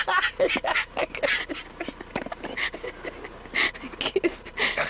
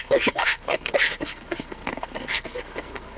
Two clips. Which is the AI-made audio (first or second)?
second